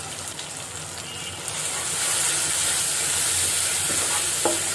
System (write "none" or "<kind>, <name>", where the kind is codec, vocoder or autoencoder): none